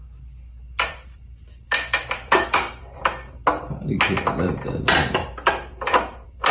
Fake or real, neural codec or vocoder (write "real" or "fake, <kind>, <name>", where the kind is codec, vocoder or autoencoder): fake, vocoder, BigVGAN v2